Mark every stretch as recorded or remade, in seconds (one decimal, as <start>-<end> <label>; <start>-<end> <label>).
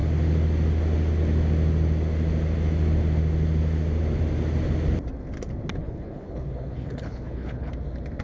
0.0-5.8 recorded; 5.8-7.7 remade; 7.7-8.2 recorded